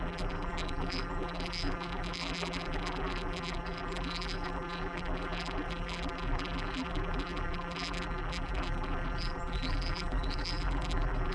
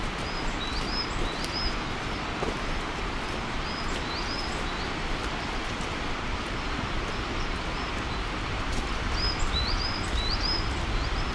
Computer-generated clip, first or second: first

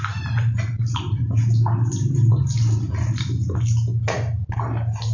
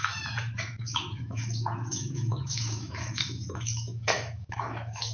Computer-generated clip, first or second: second